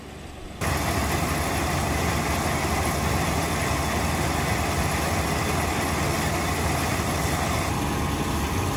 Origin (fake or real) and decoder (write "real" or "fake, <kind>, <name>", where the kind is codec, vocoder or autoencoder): real